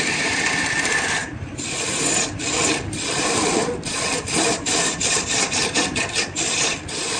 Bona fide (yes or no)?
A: no